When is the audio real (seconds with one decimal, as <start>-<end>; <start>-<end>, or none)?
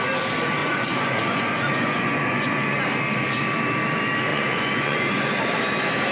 0.0-0.6; 2.8-4.3; 5.3-6.1